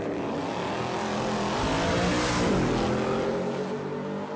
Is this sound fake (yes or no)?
no